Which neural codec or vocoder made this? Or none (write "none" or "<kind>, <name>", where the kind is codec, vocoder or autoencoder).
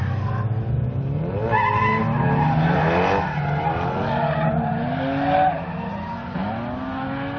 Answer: none